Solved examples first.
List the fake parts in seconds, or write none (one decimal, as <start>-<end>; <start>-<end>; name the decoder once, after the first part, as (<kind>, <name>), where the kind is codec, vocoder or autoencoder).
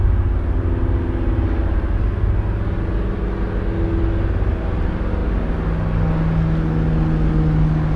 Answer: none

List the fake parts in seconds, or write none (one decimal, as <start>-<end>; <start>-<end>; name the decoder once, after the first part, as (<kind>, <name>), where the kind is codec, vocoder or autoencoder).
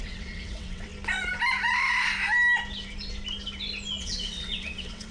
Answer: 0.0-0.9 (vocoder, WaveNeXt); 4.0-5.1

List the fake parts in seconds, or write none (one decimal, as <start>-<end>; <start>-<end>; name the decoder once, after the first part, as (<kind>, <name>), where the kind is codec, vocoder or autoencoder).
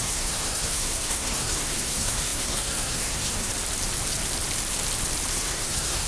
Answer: 0.0-3.5 (codec, SNAC); 5.3-6.1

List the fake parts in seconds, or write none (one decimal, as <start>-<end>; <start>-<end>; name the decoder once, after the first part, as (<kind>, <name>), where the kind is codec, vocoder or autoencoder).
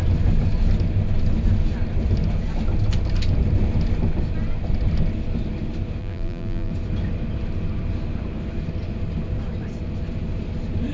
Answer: 6.0-6.7 (vocoder, BigVGAN v2)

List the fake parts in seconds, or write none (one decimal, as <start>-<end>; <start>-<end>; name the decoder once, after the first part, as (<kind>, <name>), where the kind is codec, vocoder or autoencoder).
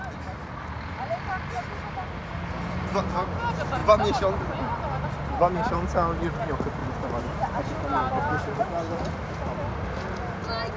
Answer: none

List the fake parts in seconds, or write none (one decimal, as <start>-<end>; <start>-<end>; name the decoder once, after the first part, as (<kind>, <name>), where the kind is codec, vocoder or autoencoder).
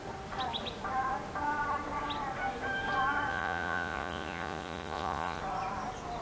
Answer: 3.3-5.4 (vocoder, Vocos)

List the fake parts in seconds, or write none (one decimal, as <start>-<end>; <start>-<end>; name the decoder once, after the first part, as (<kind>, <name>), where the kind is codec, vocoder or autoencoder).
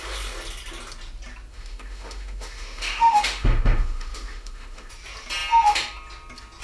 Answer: 1.5-4.9 (autoencoder, DAC-VAE)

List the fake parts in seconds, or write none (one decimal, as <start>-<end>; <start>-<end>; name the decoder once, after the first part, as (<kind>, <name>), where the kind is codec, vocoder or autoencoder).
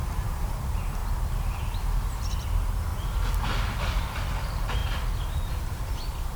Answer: 0.0-6.4 (vocoder, BigVGAN v2)